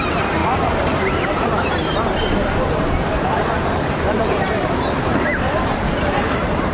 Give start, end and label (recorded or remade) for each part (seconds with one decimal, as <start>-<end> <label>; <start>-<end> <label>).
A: 0.0-6.7 remade